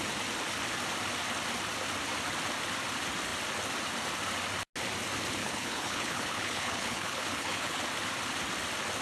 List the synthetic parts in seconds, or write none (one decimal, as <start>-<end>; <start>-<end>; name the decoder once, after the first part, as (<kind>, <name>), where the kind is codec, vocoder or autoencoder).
5.4-7.8 (codec, HILCodec)